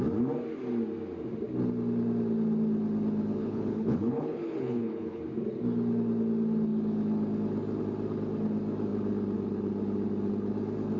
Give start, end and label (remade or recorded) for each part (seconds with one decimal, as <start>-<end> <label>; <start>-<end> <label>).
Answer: 0.0-3.4 recorded; 3.4-5.2 remade; 5.2-11.0 recorded